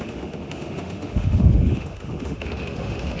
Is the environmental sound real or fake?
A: fake